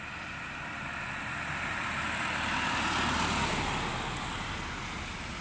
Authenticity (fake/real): real